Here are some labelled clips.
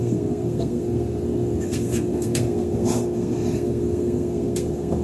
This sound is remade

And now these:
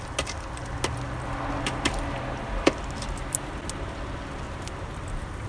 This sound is recorded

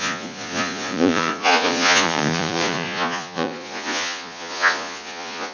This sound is remade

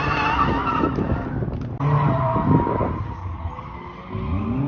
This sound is recorded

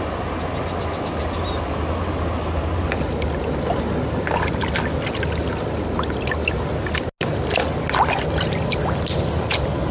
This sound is recorded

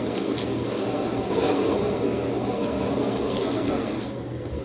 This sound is remade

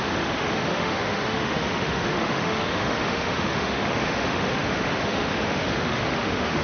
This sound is remade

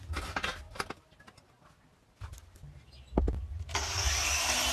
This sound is recorded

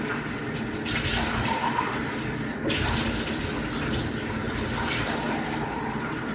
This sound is recorded